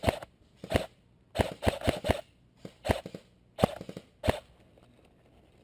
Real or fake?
real